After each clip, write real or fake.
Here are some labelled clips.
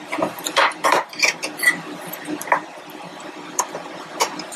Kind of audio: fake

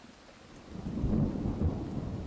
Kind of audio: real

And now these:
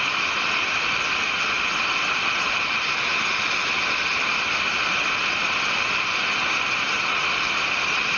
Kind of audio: fake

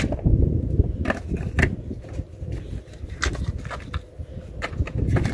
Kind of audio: real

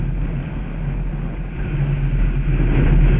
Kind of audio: real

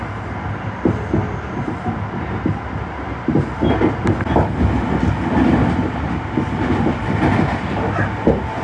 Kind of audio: real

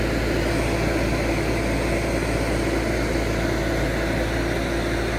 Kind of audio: real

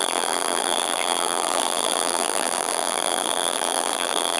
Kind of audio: fake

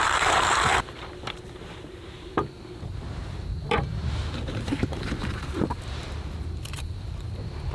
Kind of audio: fake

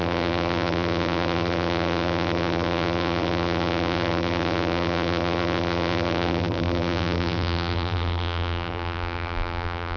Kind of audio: fake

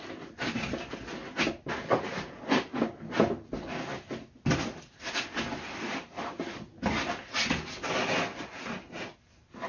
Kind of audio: real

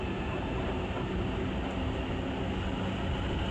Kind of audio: real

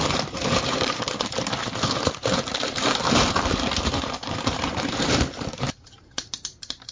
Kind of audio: fake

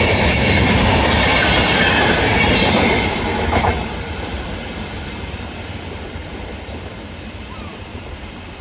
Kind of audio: fake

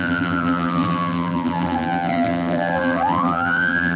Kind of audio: fake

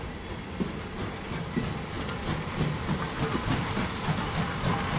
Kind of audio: real